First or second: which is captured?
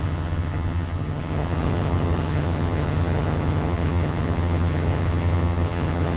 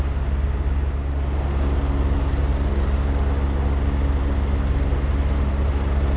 second